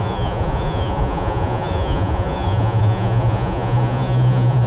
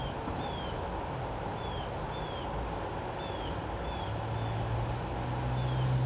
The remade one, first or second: first